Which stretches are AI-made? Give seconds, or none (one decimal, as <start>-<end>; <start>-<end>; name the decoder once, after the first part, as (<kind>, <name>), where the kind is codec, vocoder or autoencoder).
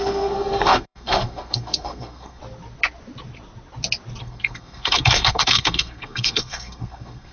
0.0-2.4 (codec, SNAC); 4.2-7.3